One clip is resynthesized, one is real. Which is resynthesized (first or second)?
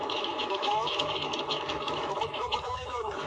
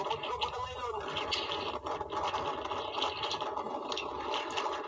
first